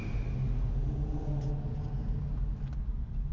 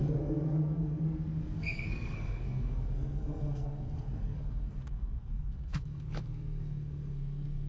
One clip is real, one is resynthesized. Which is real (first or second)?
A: first